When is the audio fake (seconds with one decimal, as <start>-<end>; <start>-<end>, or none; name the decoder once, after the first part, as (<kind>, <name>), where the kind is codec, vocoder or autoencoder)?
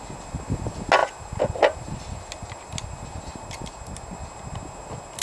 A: none